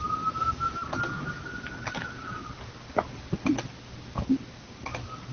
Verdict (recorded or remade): recorded